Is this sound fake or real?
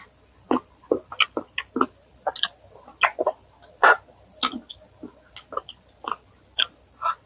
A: real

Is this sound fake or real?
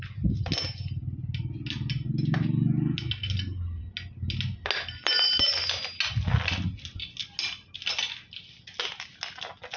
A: real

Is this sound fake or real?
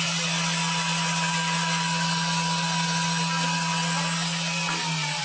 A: real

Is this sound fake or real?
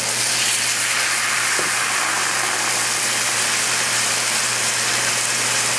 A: real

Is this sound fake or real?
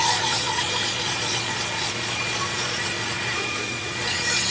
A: fake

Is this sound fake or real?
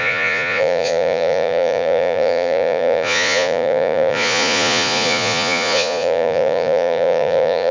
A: fake